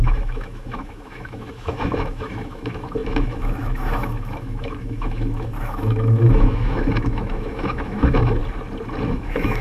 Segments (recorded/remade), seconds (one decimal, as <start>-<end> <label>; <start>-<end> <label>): 0.0-8.4 remade; 8.4-9.1 recorded; 9.1-9.6 remade